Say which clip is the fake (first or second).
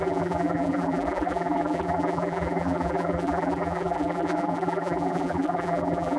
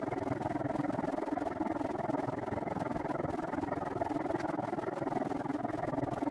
first